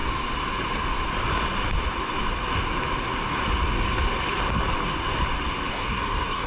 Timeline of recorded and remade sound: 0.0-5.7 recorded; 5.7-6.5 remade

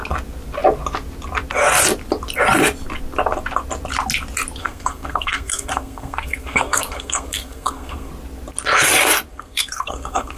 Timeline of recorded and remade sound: 0.0-4.6 recorded; 4.6-8.1 remade; 8.1-9.3 recorded; 9.3-10.4 remade

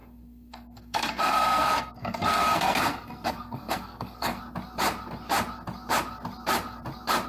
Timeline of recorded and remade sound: 0.0-4.4 remade; 4.4-7.3 recorded